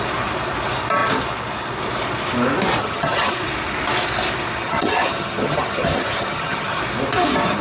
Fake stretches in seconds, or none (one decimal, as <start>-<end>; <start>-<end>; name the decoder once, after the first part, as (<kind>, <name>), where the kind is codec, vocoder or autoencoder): 2.8-3.4 (vocoder, HiFi-GAN); 4.6-6.8